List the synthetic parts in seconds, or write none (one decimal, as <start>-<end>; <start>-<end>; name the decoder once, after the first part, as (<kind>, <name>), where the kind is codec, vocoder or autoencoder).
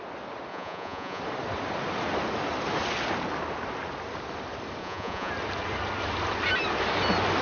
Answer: 0.5-1.2 (vocoder, Vocos); 4.8-5.3